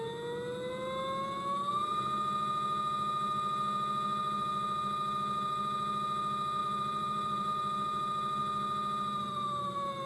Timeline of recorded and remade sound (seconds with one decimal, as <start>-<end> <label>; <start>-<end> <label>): 0.0-6.6 recorded; 6.6-7.5 remade; 7.5-10.1 recorded